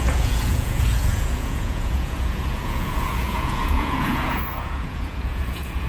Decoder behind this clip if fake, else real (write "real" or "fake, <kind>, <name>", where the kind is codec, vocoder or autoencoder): fake, vocoder, Vocos